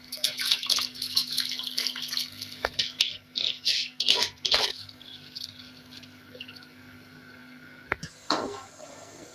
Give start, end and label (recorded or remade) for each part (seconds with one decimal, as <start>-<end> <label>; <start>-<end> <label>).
0.0-9.3 remade